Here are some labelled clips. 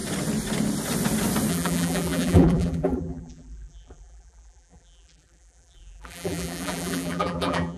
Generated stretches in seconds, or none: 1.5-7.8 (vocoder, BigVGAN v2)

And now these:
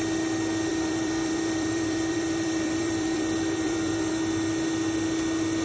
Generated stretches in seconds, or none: 0.7-4.1 (vocoder, BigVGAN v2)

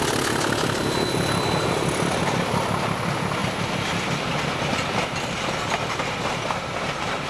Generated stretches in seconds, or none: none